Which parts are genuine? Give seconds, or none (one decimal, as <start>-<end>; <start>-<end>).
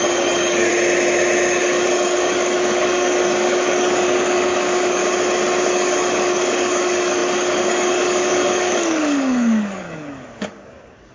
0.7-1.6; 5.0-5.7